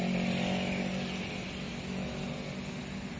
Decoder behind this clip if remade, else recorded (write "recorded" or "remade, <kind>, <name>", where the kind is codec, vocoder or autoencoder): recorded